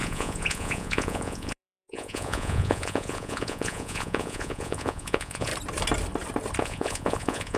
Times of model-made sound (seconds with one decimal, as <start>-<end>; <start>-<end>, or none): 0.0-5.5; 6.6-7.6